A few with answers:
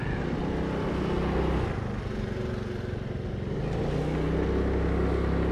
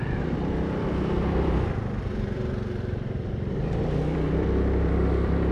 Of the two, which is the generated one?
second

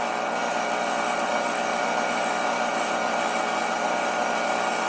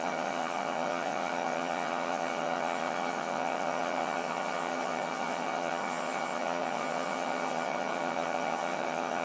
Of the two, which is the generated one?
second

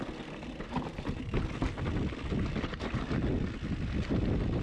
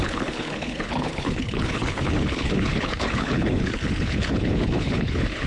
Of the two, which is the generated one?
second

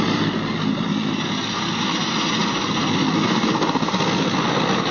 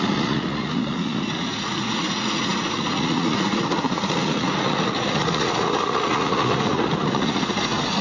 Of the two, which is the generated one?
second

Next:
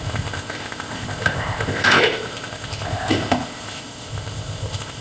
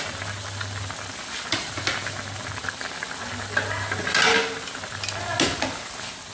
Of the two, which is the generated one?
first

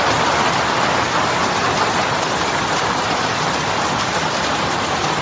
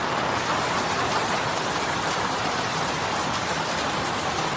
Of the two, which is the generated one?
second